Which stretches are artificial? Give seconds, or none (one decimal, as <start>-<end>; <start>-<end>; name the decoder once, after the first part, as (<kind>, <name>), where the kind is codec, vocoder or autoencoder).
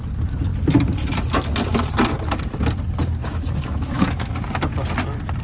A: 3.2-4.3 (autoencoder, DAC-VAE)